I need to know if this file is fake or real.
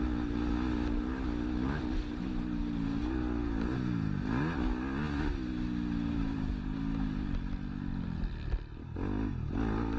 real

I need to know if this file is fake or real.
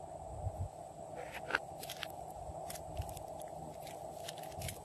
real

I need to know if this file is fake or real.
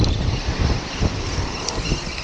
real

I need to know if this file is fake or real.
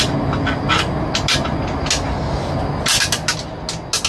real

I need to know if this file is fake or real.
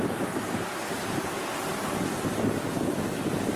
real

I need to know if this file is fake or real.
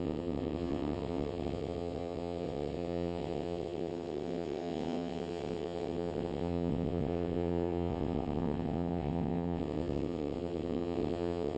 fake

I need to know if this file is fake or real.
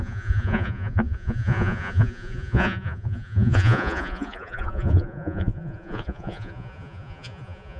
fake